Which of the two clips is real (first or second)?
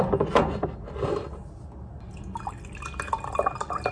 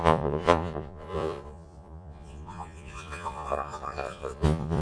first